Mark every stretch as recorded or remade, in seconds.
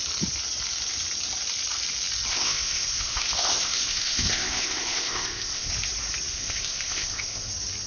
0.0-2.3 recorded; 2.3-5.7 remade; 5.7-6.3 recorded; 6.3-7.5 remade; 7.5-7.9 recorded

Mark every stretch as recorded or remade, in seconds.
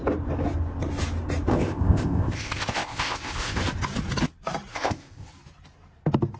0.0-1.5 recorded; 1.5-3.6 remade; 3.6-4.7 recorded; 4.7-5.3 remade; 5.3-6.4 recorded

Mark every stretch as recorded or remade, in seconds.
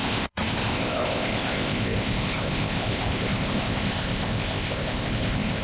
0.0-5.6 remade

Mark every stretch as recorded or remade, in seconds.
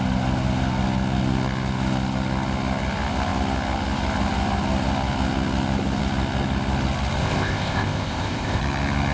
0.0-7.2 recorded; 7.2-8.6 remade; 8.6-9.1 recorded